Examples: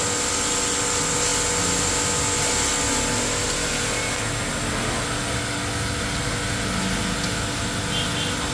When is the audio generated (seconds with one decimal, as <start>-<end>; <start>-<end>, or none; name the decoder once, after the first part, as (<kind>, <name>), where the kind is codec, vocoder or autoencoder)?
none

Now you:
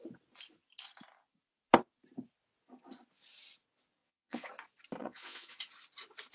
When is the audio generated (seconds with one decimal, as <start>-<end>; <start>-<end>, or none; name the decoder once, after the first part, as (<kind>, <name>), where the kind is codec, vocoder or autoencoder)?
4.0-4.5 (vocoder, Vocos); 5.0-5.6

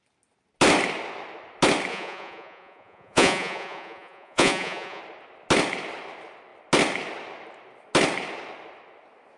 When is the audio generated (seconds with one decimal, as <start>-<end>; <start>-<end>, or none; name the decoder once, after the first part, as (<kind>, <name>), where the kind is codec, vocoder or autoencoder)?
1.9-5.0 (vocoder, Vocos)

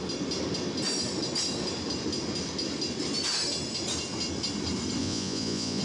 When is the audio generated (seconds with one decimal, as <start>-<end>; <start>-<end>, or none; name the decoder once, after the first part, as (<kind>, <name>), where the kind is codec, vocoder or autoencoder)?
5.0-5.8 (vocoder, Vocos)

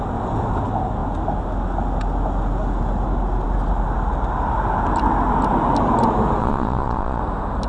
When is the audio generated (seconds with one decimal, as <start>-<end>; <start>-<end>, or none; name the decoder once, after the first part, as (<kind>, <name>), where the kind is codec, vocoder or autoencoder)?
6.4-7.2 (vocoder, Vocos)

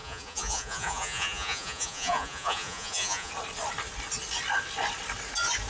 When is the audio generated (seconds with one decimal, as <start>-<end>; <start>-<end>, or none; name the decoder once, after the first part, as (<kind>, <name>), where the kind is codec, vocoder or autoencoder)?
0.0-3.3 (vocoder, Vocos)

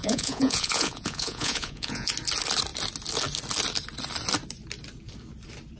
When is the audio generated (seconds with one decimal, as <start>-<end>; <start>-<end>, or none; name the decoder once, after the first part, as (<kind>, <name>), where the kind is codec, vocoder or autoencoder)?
0.0-2.1 (vocoder, Vocos)

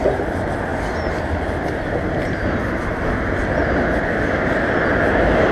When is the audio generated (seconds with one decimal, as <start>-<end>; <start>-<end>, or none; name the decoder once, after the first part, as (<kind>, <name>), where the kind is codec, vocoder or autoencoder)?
none